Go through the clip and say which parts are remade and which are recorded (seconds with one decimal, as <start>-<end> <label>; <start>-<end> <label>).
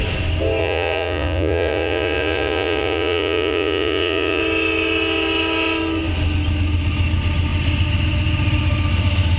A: 0.0-0.6 recorded; 0.6-4.4 remade; 4.4-9.4 recorded